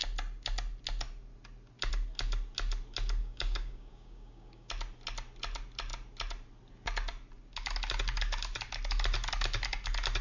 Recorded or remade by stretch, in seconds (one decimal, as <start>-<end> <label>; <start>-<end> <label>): 0.0-3.2 recorded; 3.2-4.7 remade; 4.7-10.2 recorded